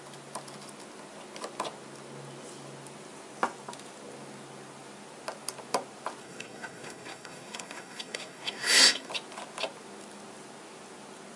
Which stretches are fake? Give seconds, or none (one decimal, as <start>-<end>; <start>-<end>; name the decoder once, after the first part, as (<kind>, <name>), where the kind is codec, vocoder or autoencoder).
6.2-9.1 (codec, SNAC)